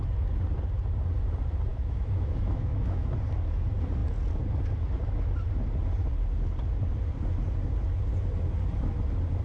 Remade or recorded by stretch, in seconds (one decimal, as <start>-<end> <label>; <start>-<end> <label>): 0.0-1.7 recorded; 1.7-3.1 remade; 3.1-9.4 recorded